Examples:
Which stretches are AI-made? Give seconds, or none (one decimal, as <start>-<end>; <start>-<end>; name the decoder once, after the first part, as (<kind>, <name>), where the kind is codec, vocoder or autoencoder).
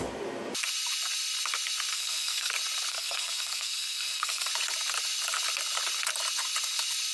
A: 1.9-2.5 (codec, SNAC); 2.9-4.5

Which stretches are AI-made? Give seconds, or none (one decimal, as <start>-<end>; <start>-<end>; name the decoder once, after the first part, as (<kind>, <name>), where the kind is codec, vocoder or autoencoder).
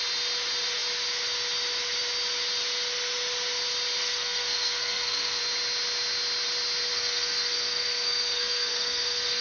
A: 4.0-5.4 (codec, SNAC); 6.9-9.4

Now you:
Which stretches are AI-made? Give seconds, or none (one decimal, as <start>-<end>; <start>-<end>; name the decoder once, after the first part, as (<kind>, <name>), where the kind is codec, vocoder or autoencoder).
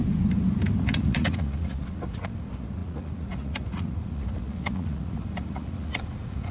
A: 0.8-6.5 (vocoder, Vocos)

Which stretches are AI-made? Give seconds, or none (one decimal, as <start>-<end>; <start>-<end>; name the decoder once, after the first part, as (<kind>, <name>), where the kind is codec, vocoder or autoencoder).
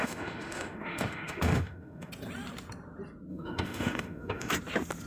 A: 0.0-2.1 (autoencoder, DAC-VAE); 3.3-4.5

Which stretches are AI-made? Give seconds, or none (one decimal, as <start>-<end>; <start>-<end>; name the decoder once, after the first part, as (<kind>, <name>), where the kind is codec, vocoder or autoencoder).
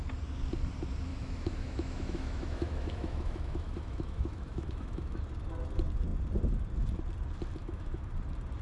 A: 1.1-5.2 (autoencoder, DAC-VAE); 7.6-8.1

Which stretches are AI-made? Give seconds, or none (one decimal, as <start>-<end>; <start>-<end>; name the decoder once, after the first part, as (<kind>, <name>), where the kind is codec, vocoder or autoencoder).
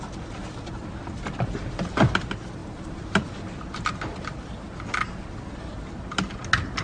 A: 2.6-3.4 (vocoder, BigVGAN v2)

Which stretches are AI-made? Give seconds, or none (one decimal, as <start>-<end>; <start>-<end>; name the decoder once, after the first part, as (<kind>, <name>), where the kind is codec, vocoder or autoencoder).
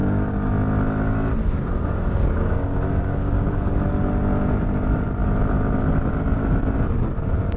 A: 0.0-0.5 (codec, DAC); 1.4-3.9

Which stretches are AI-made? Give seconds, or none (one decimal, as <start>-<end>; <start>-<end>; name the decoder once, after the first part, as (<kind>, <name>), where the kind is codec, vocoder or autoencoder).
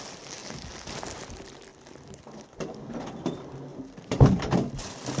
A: 0.4-1.0 (vocoder, BigVGAN v2); 1.7-2.2; 3.7-4.7